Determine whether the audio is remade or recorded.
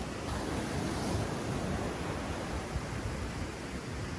recorded